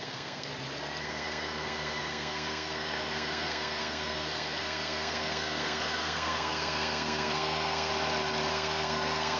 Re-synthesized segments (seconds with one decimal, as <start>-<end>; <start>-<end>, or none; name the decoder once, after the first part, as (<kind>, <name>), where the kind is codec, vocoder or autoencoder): 0.0-0.5 (codec, SNAC); 1.0-7.9; 8.5-9.4